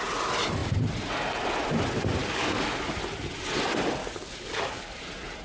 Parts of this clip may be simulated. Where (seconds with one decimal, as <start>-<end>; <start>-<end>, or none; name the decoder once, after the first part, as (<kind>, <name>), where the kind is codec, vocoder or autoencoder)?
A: 2.2-3.0 (codec, DAC); 4.0-5.0